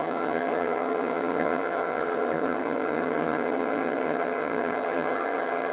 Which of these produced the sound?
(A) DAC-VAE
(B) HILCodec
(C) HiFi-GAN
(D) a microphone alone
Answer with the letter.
C